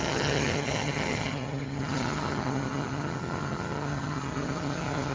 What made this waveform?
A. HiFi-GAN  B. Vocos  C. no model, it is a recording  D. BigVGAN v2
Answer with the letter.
A